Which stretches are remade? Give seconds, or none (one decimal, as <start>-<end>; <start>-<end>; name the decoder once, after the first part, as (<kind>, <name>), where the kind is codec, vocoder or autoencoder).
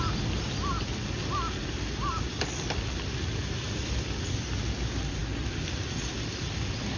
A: none